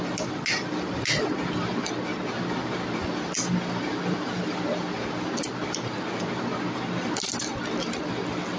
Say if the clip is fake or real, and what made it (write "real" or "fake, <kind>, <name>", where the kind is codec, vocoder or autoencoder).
real